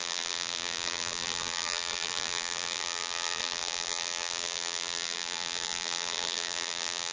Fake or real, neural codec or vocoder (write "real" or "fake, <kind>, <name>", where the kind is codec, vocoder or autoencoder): fake, vocoder, BigVGAN v2